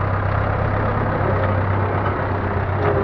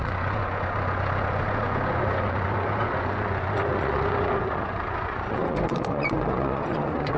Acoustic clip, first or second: first